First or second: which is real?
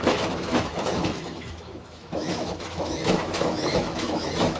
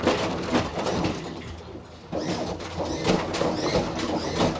second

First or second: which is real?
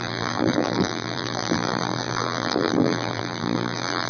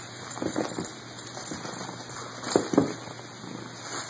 second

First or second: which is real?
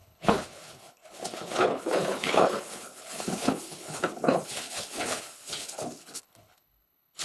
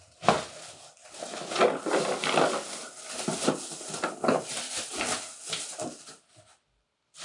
second